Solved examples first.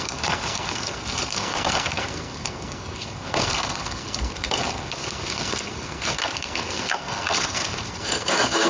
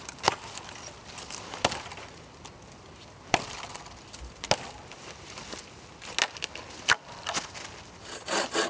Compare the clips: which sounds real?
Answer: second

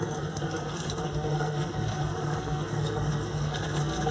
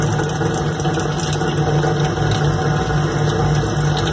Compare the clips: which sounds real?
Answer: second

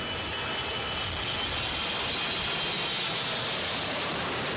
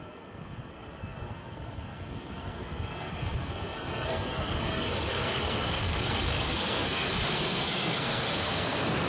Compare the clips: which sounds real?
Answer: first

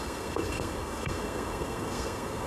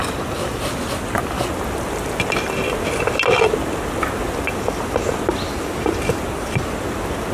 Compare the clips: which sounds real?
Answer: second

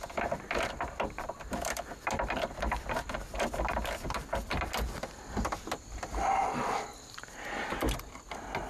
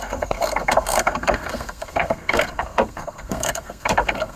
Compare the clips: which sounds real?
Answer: first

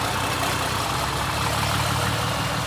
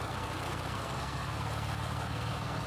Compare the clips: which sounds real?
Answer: first